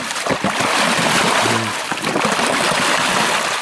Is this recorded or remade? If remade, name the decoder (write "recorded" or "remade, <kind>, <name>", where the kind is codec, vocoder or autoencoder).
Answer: remade, vocoder, BigVGAN v2